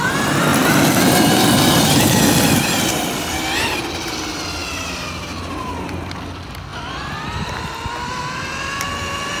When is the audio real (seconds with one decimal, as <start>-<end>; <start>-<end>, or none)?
0.0-9.4